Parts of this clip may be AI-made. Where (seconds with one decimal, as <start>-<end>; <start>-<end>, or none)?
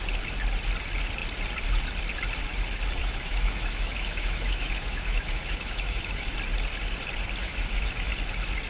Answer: 3.0-6.3; 7.4-8.1